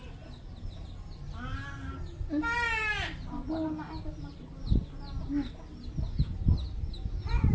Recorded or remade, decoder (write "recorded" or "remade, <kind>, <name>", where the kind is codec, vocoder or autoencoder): recorded